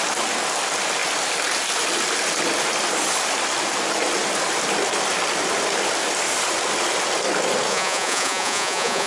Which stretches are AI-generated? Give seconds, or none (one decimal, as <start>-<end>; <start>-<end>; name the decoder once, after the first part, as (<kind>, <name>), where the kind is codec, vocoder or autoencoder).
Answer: 7.7-9.1 (vocoder, Vocos)